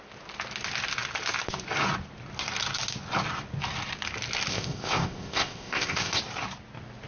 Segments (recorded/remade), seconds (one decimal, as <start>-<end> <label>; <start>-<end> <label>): 0.0-4.5 recorded; 4.5-6.2 remade; 6.2-7.1 recorded